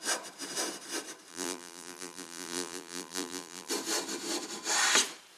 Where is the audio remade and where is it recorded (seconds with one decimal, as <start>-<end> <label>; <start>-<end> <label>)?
0.0-1.3 recorded; 1.3-3.7 remade; 3.7-5.4 recorded